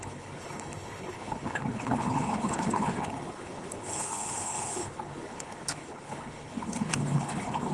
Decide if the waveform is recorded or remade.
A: remade